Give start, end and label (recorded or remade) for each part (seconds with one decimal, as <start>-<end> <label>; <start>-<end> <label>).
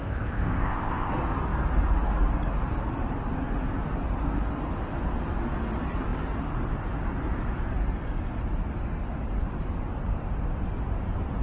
0.0-1.1 remade; 1.1-11.4 recorded